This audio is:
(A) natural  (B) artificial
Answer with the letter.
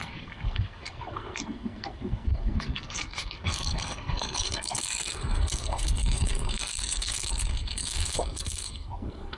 B